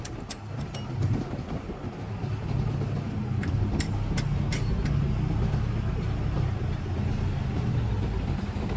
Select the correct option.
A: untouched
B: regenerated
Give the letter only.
A